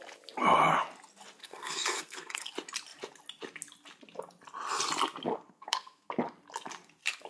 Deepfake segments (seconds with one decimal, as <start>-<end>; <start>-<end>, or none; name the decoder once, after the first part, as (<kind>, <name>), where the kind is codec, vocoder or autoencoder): 1.4-2.5 (codec, SNAC); 5.3-6.1